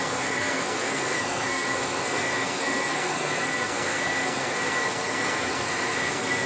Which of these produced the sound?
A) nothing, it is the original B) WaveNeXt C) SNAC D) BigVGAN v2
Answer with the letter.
C